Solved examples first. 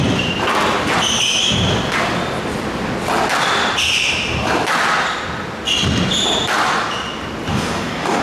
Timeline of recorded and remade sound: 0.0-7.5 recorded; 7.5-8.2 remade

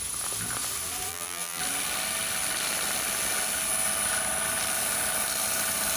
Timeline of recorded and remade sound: 0.0-1.1 recorded; 1.1-1.6 remade; 1.6-6.0 recorded

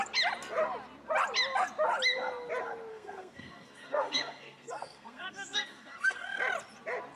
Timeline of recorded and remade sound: 0.0-2.9 recorded; 2.9-6.4 remade; 6.4-7.2 recorded

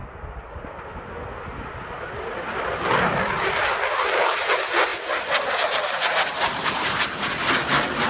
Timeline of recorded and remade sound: 0.0-8.1 recorded

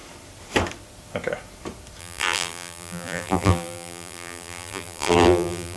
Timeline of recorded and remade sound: 0.0-2.0 recorded; 2.0-5.8 remade